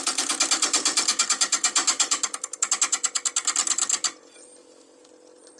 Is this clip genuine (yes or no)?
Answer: yes